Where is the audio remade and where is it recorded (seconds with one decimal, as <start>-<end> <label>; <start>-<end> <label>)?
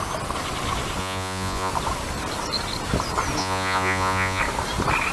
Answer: 0.0-1.0 recorded; 1.0-1.7 remade; 1.7-3.4 recorded; 3.4-4.4 remade; 4.4-5.1 recorded